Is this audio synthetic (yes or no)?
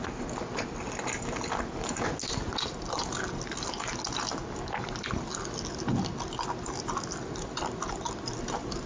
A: no